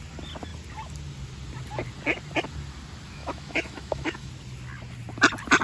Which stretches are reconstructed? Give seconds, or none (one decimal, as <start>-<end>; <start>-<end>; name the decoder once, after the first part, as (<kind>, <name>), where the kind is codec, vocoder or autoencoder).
3.2-4.3 (autoencoder, DAC-VAE)